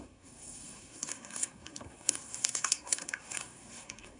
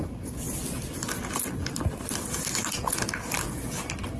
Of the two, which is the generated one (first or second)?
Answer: first